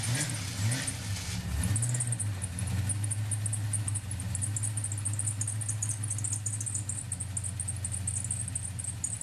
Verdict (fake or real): real